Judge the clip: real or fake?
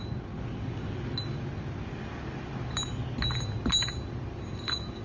real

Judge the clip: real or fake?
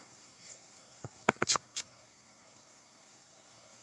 fake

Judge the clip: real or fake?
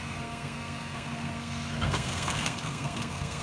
fake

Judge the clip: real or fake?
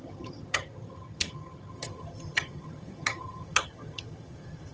fake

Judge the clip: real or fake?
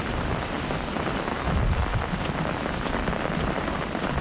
real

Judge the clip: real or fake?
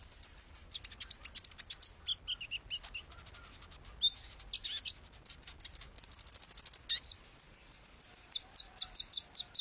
real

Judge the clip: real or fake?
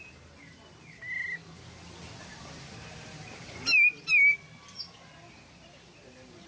real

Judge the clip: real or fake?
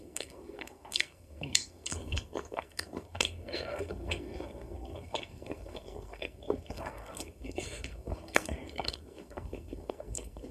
fake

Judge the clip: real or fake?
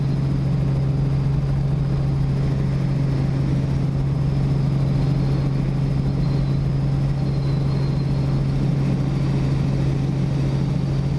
real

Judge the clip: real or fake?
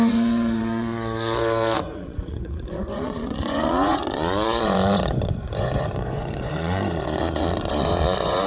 fake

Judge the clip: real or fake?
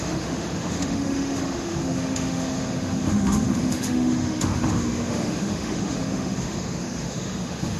fake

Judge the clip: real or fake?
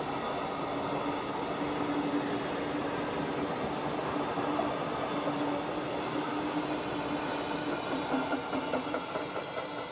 real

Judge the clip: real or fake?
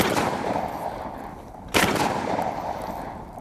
real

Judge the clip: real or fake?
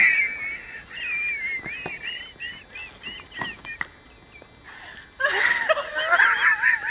real